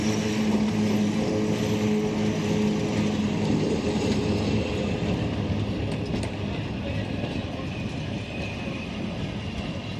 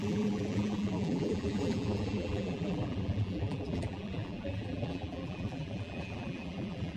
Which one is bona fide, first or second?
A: first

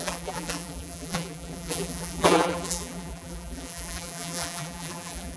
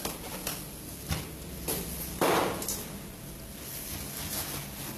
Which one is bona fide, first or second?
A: second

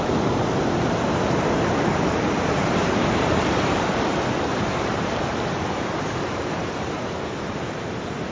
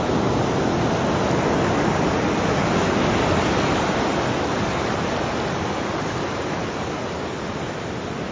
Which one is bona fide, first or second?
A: second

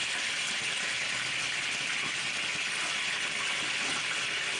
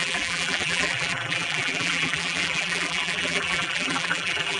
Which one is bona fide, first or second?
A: first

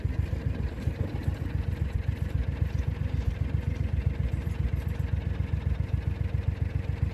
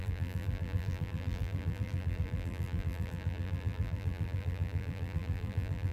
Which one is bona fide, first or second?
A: first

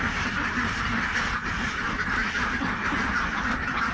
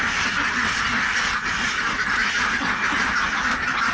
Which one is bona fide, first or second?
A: second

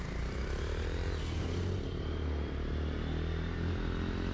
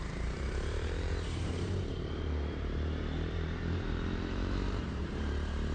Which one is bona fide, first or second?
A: first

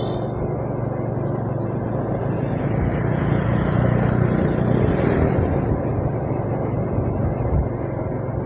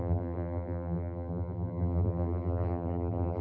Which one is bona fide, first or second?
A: first